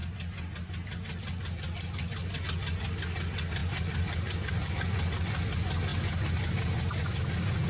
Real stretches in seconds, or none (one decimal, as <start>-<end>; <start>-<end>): 0.0-3.6; 4.7-7.7